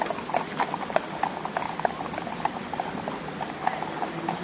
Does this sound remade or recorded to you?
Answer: recorded